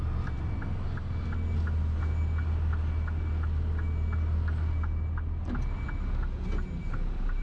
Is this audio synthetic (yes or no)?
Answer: no